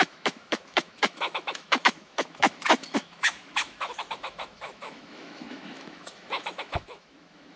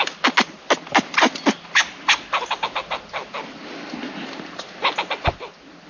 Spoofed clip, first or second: first